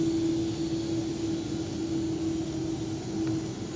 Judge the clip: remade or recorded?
recorded